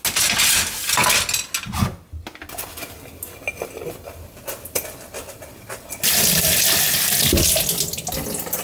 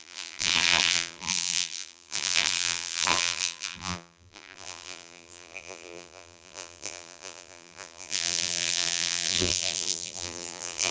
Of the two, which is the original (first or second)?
first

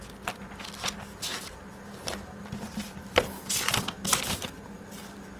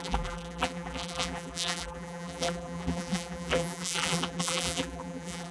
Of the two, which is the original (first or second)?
first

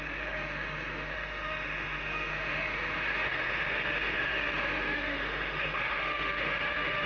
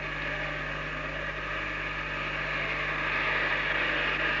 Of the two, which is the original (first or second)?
second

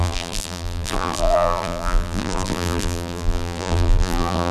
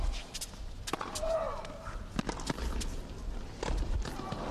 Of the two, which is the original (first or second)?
second